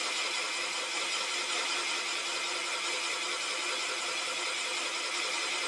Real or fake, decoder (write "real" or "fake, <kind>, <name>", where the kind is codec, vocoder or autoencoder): real